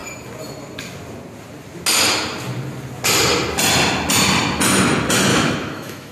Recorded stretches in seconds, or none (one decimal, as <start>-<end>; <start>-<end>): 0.0-5.3